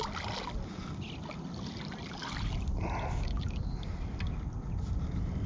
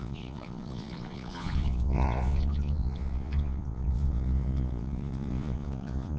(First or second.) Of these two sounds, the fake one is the second